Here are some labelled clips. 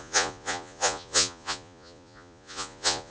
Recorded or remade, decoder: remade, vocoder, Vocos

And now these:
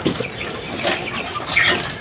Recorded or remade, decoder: recorded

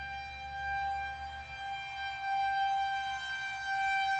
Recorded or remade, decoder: recorded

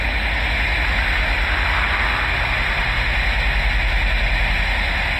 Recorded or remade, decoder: recorded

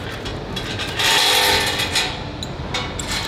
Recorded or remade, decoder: recorded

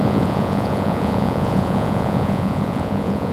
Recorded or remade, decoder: remade, vocoder, Vocos